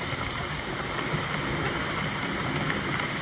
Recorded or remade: recorded